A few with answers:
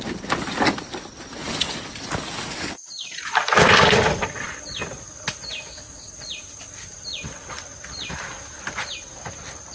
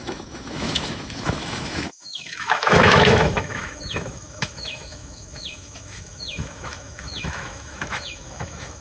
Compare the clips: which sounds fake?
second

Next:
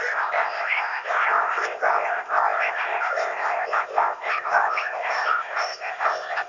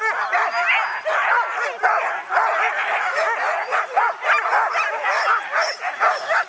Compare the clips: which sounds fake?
first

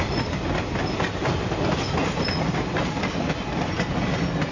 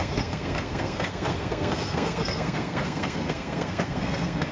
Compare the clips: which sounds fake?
second